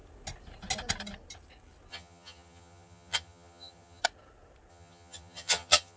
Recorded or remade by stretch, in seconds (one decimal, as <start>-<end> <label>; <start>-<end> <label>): 0.0-1.9 recorded; 1.9-4.0 remade; 4.0-4.7 recorded; 4.7-6.0 remade